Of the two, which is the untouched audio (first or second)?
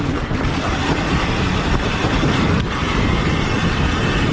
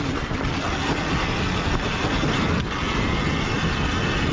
second